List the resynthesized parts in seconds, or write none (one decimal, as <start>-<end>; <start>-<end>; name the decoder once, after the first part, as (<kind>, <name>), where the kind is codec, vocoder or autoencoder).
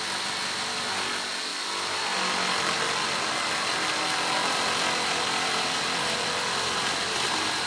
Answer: none